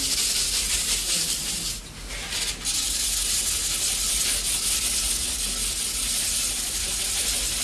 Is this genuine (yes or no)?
yes